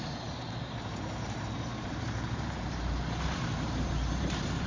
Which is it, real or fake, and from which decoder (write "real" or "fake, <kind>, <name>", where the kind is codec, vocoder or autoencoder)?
fake, vocoder, BigVGAN v2